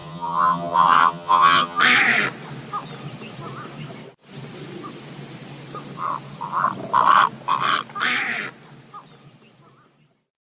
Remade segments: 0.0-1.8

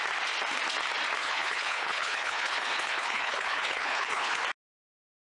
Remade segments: 1.2-4.4

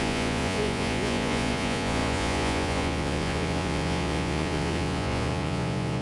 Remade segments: 0.0-6.0

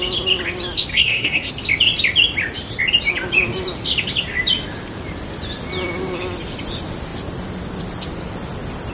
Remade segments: 0.9-1.5

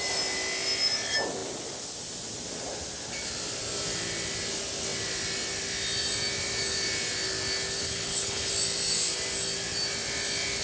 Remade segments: 7.8-8.5

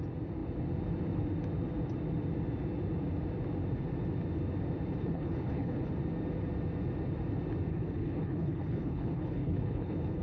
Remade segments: 5.0-5.9; 7.7-10.2